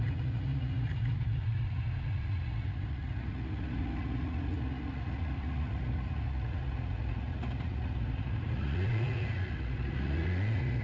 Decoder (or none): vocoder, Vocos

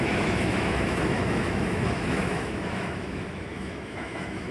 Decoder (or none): autoencoder, DAC-VAE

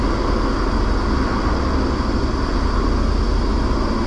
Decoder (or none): none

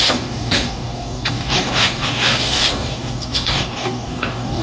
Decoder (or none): codec, DAC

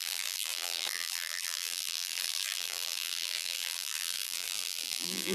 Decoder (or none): vocoder, BigVGAN v2